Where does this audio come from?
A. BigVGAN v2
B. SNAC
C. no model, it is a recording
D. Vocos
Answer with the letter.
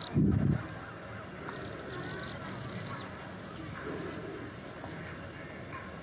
C